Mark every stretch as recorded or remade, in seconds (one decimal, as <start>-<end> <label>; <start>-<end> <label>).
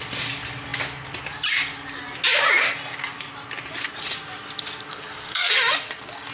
0.0-4.9 recorded; 4.9-5.5 remade; 5.5-6.3 recorded